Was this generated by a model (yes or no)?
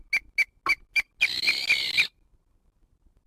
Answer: no